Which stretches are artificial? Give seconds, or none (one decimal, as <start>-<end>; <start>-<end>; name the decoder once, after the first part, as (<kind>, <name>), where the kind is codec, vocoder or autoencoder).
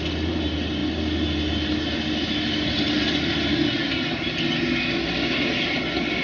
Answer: none